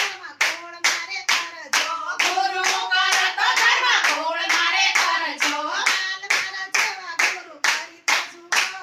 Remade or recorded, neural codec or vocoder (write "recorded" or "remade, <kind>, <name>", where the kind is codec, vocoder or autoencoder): remade, vocoder, BigVGAN v2